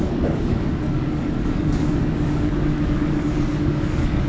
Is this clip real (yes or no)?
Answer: no